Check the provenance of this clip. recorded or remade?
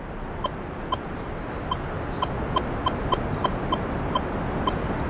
recorded